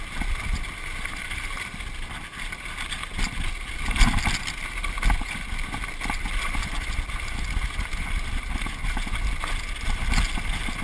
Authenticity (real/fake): real